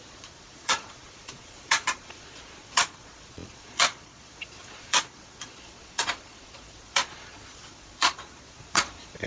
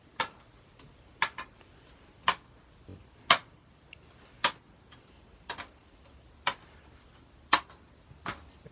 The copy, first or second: first